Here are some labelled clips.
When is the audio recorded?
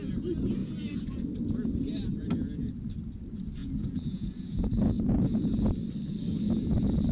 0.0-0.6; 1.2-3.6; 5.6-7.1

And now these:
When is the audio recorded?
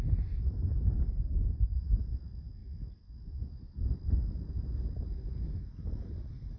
0.0-1.1; 2.0-6.6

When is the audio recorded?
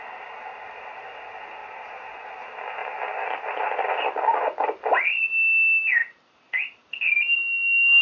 0.0-1.6; 2.1-2.8; 4.0-6.0; 6.9-8.0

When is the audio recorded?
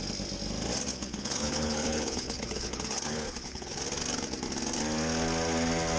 0.0-0.9; 3.8-6.0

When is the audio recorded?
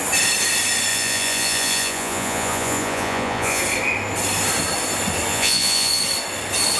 0.0-0.9; 3.6-5.3; 6.0-6.8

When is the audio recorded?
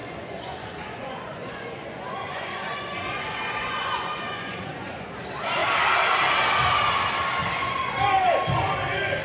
5.1-7.4; 7.9-9.2